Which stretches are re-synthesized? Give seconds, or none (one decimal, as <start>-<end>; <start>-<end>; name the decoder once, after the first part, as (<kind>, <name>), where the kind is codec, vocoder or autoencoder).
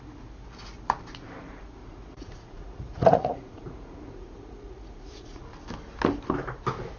1.8-5.4 (vocoder, Vocos)